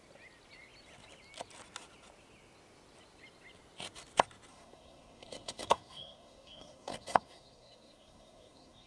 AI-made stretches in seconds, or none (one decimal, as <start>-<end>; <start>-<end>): 4.5-8.9